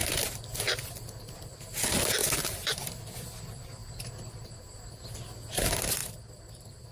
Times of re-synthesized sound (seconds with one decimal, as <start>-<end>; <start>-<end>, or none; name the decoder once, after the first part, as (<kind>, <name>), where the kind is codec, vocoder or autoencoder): 2.2-2.9 (vocoder, BigVGAN v2)